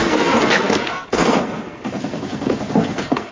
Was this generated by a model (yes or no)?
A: yes